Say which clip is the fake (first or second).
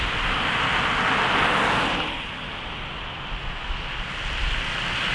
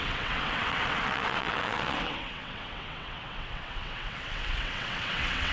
second